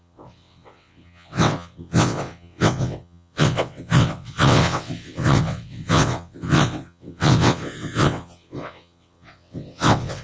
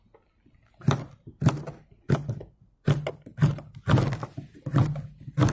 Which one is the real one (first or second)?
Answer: second